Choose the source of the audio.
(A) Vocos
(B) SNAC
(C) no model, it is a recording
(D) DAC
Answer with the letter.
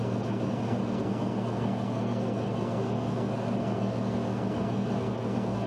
B